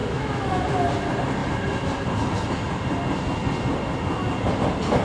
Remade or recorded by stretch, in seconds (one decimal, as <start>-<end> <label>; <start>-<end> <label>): 0.0-0.6 remade; 0.6-5.0 recorded